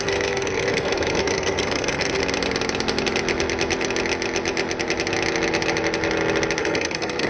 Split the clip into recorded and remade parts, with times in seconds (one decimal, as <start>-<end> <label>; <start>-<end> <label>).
0.0-2.2 remade; 2.2-6.6 recorded; 6.6-7.3 remade